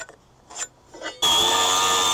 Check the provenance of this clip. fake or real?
real